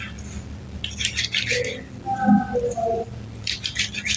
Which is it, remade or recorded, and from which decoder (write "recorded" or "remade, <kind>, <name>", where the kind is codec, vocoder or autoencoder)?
recorded